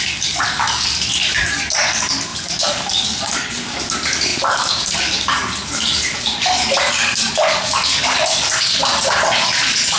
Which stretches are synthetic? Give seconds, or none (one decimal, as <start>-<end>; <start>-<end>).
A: 0.0-10.0